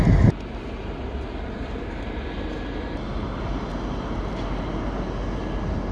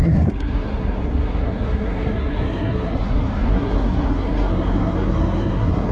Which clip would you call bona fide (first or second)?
first